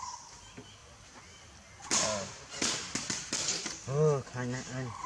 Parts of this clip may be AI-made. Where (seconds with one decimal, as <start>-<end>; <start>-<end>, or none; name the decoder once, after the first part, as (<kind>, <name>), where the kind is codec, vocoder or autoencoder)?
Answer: none